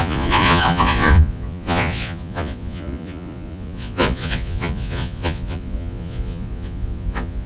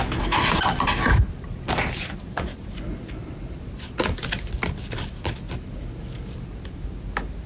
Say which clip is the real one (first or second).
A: second